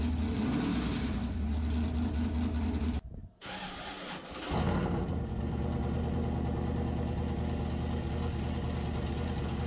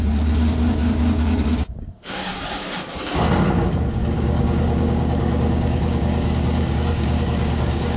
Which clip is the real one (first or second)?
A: first